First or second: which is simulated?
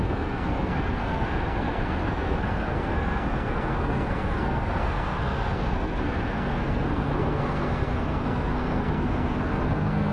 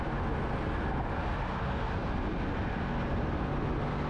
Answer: first